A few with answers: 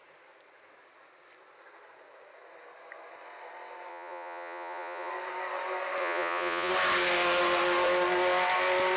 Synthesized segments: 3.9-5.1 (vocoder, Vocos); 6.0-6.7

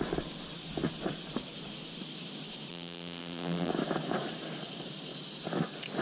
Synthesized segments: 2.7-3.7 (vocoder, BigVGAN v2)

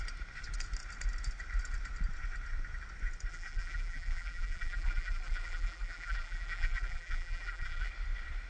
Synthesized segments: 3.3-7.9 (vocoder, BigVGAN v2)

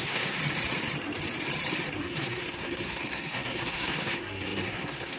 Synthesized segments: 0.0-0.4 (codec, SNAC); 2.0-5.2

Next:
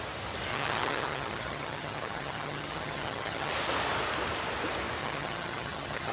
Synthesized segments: 0.5-3.5 (vocoder, HiFi-GAN); 5.0-6.1

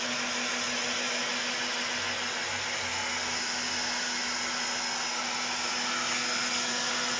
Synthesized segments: none

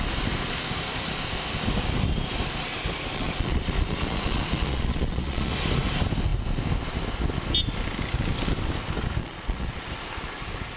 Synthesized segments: 3.1-5.5 (vocoder, Vocos); 9.2-9.8

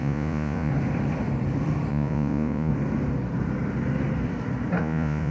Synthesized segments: 0.0-0.7 (vocoder, Vocos); 1.9-2.7; 4.8-5.3